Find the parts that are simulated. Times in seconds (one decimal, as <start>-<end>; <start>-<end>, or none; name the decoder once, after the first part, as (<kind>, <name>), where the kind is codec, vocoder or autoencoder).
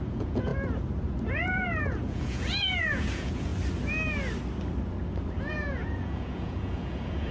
0.0-0.5 (vocoder, Vocos); 1.3-3.5; 5.4-7.3